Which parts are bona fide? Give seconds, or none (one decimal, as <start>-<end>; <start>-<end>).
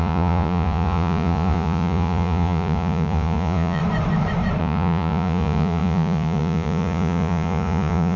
3.8-4.6